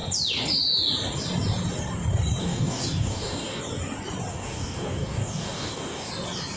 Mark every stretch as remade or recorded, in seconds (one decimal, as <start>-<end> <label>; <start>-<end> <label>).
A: 0.0-2.4 recorded; 2.4-3.6 remade; 3.6-4.3 recorded; 4.3-6.1 remade; 6.1-6.6 recorded